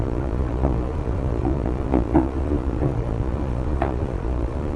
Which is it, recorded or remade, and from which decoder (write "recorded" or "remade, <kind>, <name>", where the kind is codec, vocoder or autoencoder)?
remade, vocoder, Vocos